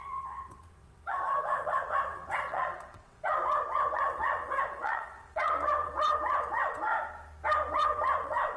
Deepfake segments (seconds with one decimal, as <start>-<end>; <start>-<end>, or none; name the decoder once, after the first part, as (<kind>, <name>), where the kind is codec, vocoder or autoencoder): 0.0-6.9 (vocoder, WaveNeXt); 7.7-8.6